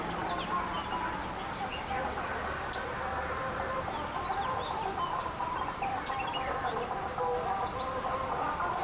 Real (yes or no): yes